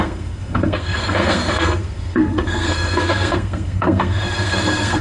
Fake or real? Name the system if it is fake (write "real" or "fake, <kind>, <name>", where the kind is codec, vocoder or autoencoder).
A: fake, codec, SNAC